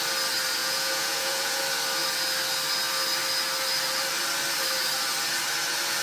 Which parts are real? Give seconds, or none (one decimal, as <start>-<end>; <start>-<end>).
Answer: 0.0-0.6; 1.6-6.0